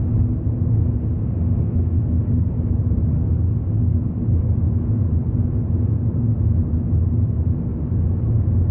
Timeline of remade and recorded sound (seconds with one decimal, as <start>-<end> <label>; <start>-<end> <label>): 0.0-1.2 recorded; 1.2-2.5 remade; 2.5-8.7 recorded